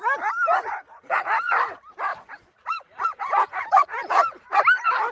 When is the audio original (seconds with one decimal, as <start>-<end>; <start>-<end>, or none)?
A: 0.0-0.9; 1.6-2.1; 4.6-5.1